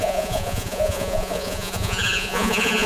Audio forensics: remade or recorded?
remade